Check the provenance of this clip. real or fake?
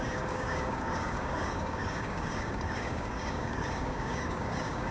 fake